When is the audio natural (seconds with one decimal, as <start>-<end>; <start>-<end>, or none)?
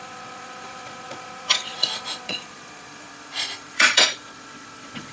none